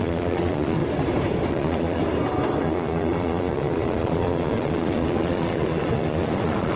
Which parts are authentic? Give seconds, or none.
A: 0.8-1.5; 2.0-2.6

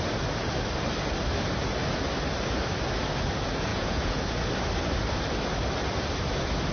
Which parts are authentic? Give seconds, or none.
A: 0.0-3.7; 4.2-6.7

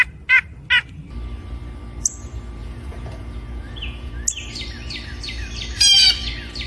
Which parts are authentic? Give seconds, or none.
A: 0.0-2.6; 4.1-6.7

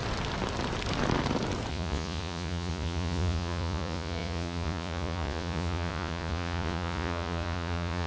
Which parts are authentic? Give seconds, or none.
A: 0.0-1.7

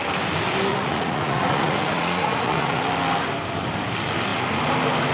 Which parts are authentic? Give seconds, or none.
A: 0.0-0.7; 2.8-5.1

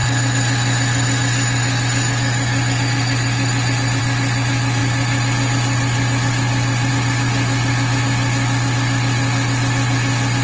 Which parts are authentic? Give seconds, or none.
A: 0.0-10.4

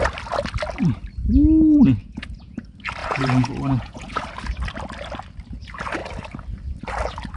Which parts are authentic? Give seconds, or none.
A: 0.0-2.0; 2.6-3.0; 4.2-7.4

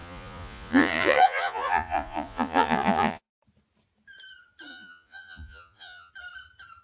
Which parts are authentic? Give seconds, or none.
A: 3.3-4.7; 6.1-6.8